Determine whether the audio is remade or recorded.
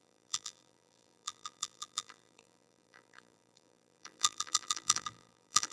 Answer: remade